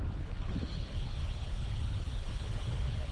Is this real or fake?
fake